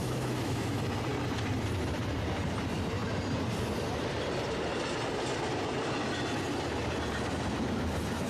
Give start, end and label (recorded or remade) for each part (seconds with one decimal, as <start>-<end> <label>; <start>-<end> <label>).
0.0-0.8 remade; 0.8-8.3 recorded